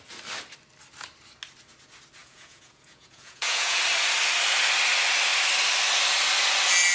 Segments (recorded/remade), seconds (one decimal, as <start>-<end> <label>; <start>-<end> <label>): 0.0-2.2 recorded; 2.2-3.8 remade; 3.8-6.9 recorded